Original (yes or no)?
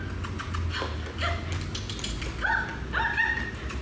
yes